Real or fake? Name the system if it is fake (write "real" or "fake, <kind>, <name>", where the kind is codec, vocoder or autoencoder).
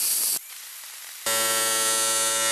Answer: real